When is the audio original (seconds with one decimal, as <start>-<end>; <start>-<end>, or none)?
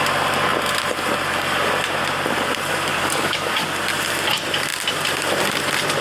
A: 0.0-2.9; 3.7-6.0